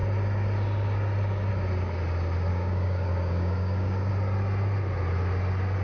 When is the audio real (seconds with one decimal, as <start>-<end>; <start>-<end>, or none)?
0.0-2.5; 4.1-5.8